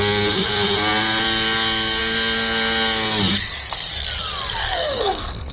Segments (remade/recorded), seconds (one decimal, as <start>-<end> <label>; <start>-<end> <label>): 0.0-4.6 recorded; 4.6-5.5 remade